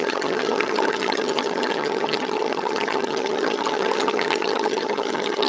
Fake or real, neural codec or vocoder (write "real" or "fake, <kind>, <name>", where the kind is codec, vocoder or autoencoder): fake, vocoder, HiFi-GAN